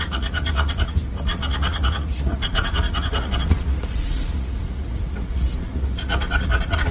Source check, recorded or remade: remade